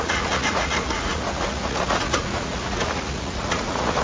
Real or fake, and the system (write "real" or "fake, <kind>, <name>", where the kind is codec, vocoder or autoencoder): fake, vocoder, Vocos